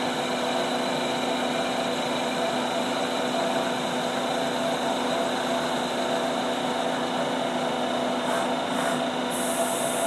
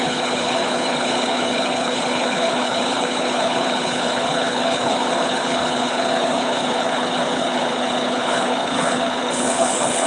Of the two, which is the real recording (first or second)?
first